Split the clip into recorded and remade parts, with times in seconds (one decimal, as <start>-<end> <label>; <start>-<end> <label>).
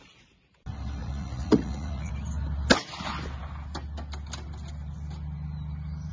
0.0-1.0 recorded; 1.0-2.1 remade; 2.1-6.1 recorded